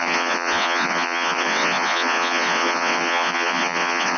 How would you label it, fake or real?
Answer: fake